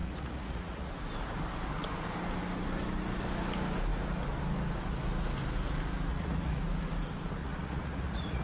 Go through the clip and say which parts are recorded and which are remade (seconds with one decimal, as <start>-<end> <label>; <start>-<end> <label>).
0.0-0.9 remade; 0.9-6.1 recorded; 6.1-6.6 remade; 6.6-7.4 recorded; 7.4-8.4 remade